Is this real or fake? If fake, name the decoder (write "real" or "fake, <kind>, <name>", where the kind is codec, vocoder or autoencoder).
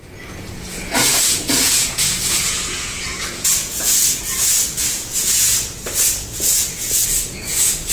fake, vocoder, Vocos